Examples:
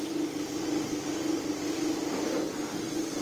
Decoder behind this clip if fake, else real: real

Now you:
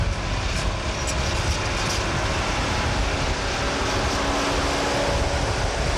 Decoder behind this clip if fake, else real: real